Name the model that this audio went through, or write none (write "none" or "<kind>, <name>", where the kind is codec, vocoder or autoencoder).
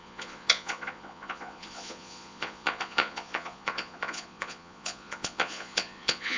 vocoder, Vocos